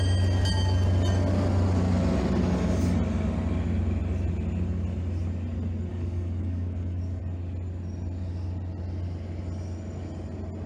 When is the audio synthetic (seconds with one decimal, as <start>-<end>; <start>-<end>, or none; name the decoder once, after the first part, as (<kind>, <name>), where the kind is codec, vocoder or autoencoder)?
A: 5.9-7.2 (codec, DAC)